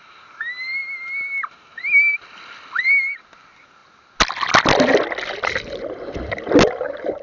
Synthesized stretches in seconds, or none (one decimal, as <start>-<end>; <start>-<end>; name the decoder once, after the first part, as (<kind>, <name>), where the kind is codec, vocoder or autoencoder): none